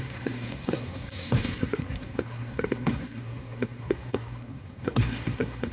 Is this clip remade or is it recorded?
remade